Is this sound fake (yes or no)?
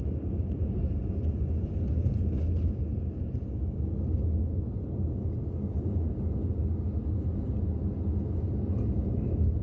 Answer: no